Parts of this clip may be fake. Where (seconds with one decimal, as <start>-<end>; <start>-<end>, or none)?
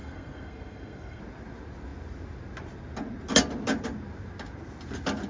0.0-1.2